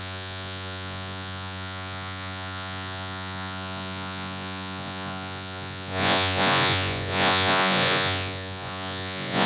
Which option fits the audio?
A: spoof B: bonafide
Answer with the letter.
A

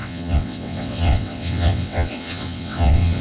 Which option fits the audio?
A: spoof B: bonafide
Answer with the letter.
A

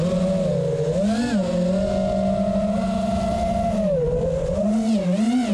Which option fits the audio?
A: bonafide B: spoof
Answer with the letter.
A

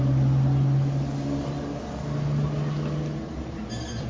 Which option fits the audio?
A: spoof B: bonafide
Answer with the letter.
B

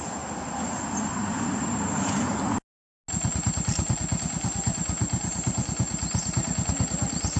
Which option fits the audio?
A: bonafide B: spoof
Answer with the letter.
A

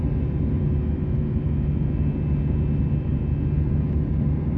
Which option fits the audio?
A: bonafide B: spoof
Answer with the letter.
A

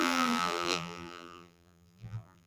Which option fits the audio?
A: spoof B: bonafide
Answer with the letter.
A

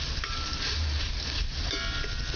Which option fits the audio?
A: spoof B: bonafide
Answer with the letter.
B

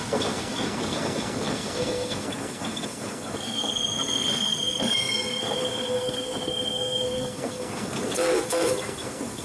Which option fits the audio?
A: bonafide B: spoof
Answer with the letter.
B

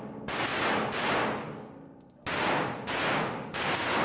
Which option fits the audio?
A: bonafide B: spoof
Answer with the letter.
A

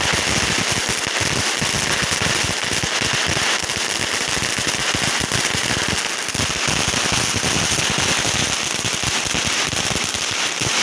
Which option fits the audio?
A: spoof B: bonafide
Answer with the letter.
B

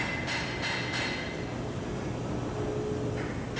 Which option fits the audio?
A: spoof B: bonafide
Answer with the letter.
B